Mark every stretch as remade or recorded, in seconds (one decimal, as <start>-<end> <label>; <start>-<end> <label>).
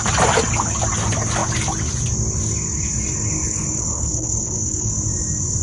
0.0-3.4 recorded; 3.4-4.9 remade; 4.9-5.6 recorded